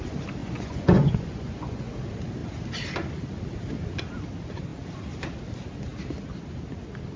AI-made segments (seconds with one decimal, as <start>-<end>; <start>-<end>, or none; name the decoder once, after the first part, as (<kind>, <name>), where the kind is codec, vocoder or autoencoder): 0.4-1.9 (vocoder, Vocos)